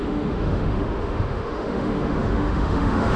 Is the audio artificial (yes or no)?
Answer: yes